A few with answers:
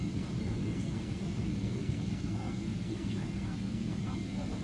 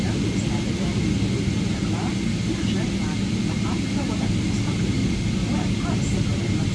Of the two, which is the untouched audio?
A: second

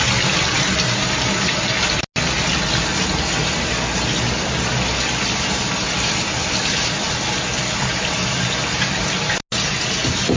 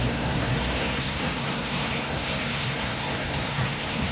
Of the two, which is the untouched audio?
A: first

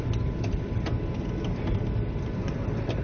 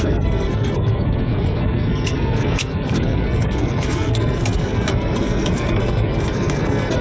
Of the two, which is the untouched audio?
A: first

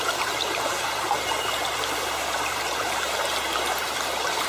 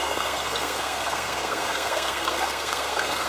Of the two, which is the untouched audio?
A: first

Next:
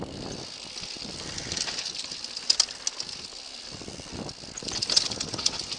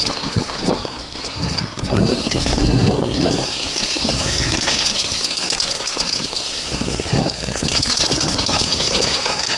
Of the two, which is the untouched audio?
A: first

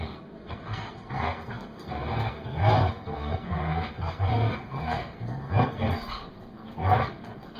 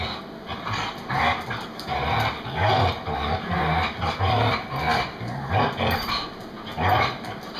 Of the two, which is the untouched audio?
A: second